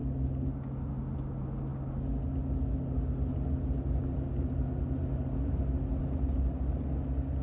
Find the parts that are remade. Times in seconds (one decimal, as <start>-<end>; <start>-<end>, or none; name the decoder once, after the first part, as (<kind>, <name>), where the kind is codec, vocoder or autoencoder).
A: none